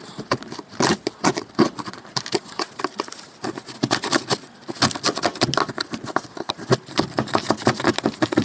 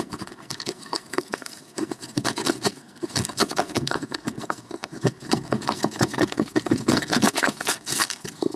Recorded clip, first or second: first